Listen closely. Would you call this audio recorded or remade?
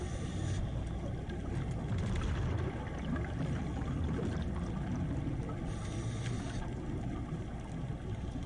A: recorded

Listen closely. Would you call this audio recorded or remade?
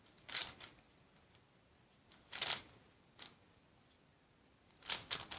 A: recorded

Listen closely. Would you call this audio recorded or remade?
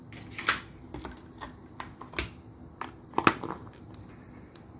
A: recorded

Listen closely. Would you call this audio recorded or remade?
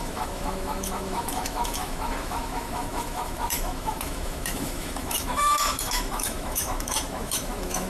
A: remade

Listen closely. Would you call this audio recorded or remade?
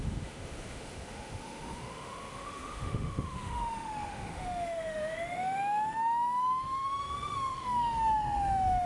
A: remade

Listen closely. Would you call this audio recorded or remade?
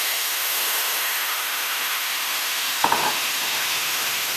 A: remade